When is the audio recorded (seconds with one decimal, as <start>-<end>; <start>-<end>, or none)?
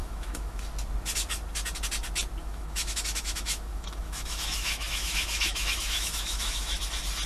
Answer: 0.6-2.4; 6.8-7.3